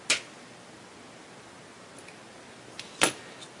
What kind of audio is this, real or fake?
real